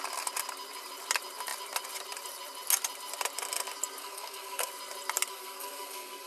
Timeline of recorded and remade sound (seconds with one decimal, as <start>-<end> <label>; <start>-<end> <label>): 0.0-4.0 recorded; 4.0-4.7 remade; 4.7-5.3 recorded; 5.3-6.3 remade